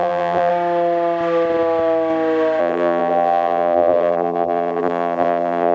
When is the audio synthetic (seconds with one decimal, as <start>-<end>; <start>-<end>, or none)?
0.0-0.5; 2.6-5.7